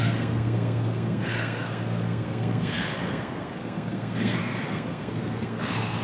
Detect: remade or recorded remade